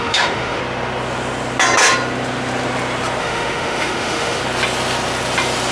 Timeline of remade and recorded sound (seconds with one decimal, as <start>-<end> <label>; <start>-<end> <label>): 0.0-0.6 remade; 0.6-3.2 recorded; 3.2-4.4 remade; 4.4-5.7 recorded